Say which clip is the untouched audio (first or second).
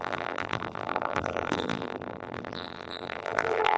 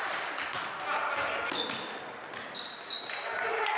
second